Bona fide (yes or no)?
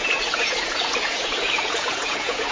no